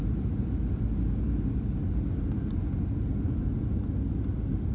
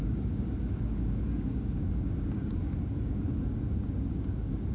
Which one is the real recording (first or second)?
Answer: first